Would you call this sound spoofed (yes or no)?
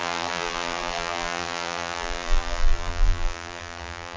yes